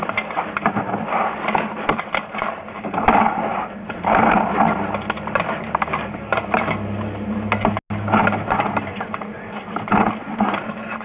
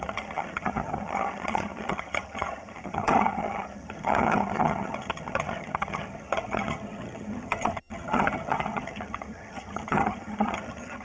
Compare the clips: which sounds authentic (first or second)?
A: first